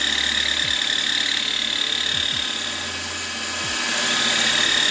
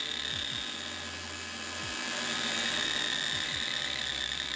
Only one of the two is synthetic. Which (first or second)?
second